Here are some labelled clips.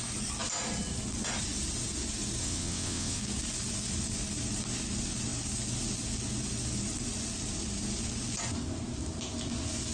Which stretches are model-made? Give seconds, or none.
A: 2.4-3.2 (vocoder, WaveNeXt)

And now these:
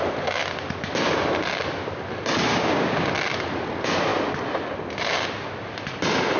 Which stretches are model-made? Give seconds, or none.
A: 2.5-3.1 (codec, DAC)

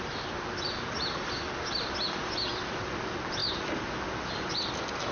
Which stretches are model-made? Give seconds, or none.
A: none

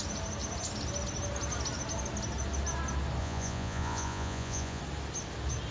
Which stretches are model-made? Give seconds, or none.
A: 3.2-4.8 (vocoder, Vocos)

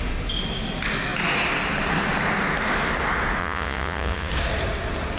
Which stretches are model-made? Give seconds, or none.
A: 3.4-4.3 (vocoder, Vocos)